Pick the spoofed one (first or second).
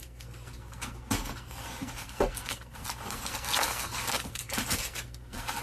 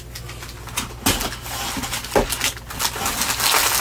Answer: first